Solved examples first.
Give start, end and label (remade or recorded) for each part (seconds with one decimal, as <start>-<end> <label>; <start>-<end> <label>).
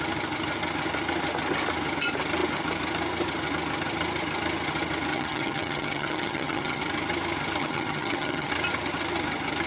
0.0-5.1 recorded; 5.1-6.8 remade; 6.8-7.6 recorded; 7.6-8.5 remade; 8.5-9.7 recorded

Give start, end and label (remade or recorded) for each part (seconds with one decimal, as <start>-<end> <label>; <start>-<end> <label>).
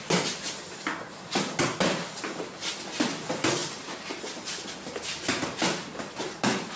0.0-6.8 recorded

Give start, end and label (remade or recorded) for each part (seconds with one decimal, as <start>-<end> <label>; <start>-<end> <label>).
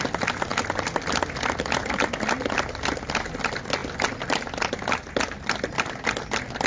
0.0-6.7 recorded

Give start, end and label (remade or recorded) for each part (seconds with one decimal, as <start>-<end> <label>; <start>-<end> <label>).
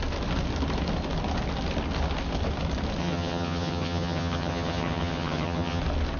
0.0-3.0 recorded; 3.0-5.8 remade; 5.8-6.2 recorded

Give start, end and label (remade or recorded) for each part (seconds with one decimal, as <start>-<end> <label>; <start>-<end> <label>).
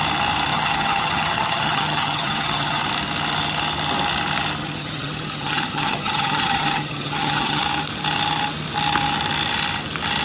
0.0-0.5 recorded; 0.5-2.8 remade; 2.8-4.6 recorded; 4.6-7.6 remade; 7.6-10.2 recorded